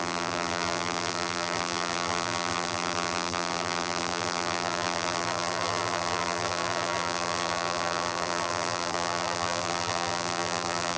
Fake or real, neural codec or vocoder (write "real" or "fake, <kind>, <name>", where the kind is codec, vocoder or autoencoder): fake, vocoder, BigVGAN v2